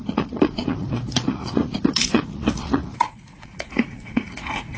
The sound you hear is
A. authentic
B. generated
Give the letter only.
B